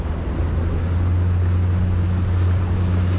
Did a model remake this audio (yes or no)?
no